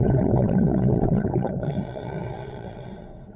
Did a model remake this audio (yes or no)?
yes